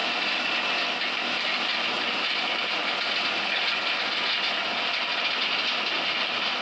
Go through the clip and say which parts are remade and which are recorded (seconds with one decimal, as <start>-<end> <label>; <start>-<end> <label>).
0.0-0.5 remade; 0.5-1.7 recorded; 1.7-2.9 remade; 2.9-6.6 recorded